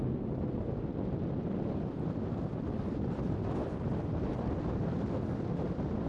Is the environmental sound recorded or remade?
recorded